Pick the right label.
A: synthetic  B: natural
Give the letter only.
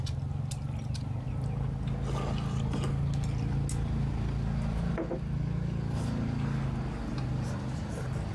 B